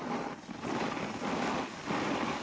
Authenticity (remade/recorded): recorded